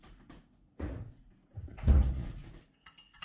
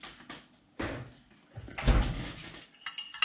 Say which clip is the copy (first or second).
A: first